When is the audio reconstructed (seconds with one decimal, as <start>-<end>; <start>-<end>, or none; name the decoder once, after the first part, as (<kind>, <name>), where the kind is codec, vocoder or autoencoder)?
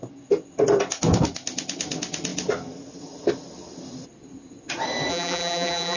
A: 5.1-6.0 (vocoder, BigVGAN v2)